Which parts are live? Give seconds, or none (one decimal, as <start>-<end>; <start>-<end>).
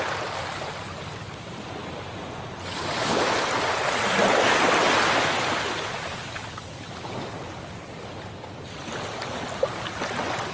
0.0-10.5